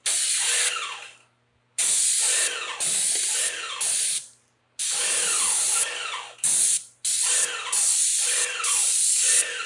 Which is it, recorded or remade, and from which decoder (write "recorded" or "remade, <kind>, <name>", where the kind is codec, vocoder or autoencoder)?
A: recorded